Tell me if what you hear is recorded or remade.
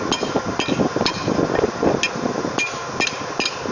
recorded